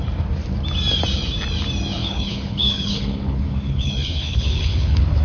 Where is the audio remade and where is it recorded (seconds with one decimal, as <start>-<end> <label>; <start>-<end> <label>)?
0.0-2.0 recorded; 2.0-5.2 remade

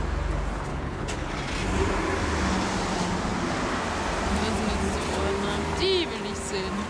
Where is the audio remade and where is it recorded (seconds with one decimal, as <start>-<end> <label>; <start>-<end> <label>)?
0.0-0.7 recorded; 0.7-1.3 remade; 1.3-6.9 recorded

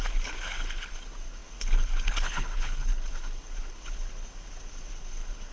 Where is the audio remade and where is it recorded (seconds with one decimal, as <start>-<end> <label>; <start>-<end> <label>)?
0.0-5.5 remade

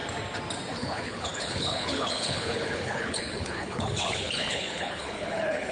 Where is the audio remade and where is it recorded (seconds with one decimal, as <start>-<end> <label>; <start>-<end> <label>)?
0.0-0.7 recorded; 0.7-5.7 remade

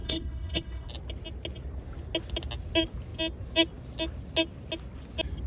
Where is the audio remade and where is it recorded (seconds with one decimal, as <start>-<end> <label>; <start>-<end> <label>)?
0.0-0.9 remade; 0.9-5.5 recorded

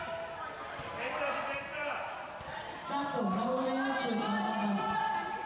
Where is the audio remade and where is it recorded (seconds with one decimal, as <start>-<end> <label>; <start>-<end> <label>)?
0.0-5.5 recorded

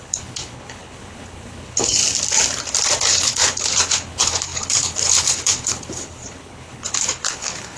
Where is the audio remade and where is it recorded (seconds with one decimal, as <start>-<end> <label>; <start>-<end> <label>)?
0.0-2.0 remade; 2.0-3.1 recorded; 3.1-7.8 remade

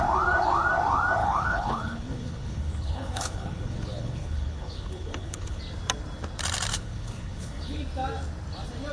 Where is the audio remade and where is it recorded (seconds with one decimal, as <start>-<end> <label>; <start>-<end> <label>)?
0.0-1.2 recorded; 1.2-5.6 remade; 5.6-6.7 recorded; 6.7-7.8 remade; 7.8-8.9 recorded